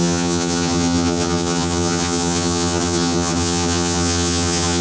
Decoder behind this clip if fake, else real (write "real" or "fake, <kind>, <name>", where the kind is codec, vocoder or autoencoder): fake, vocoder, HiFi-GAN